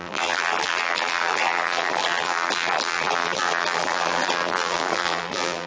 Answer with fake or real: fake